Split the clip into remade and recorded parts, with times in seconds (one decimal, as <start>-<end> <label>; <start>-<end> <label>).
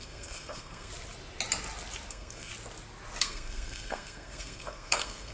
0.0-0.9 remade; 0.9-2.1 recorded; 2.1-2.5 remade; 2.5-3.2 recorded; 3.2-5.3 remade